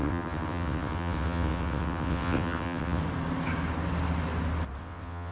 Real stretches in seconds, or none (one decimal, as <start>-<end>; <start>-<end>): 3.0-4.8